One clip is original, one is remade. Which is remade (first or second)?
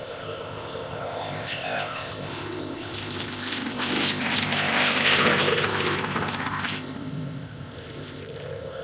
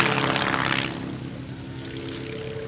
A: first